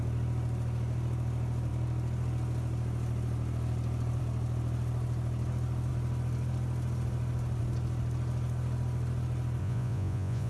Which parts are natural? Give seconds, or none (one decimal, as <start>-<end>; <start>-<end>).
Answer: 0.0-9.6